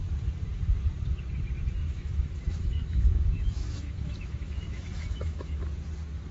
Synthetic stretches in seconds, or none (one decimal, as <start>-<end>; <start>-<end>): 1.8-5.6